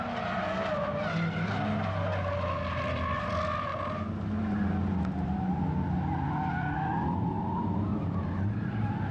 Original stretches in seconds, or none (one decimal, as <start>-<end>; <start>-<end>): 0.0-3.7; 5.5-7.9; 8.7-9.1